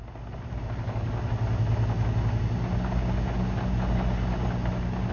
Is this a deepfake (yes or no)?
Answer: no